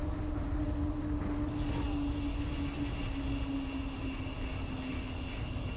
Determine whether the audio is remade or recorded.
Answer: recorded